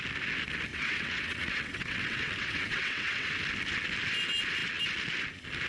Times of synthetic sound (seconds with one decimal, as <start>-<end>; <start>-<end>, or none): 0.7-3.3